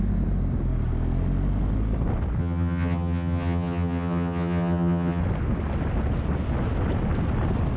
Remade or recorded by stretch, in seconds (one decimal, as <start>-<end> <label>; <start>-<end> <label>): 0.0-2.4 recorded; 2.4-5.2 remade; 5.2-7.8 recorded